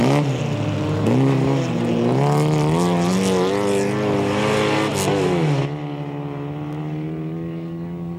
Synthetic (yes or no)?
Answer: no